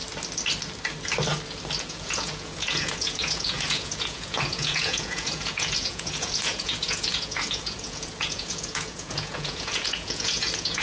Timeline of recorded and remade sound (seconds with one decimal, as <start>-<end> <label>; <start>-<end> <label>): 0.0-1.8 recorded; 1.8-10.8 remade